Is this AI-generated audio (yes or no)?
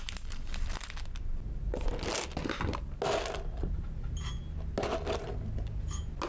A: no